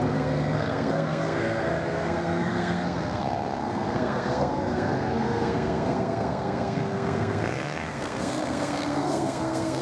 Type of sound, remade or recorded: remade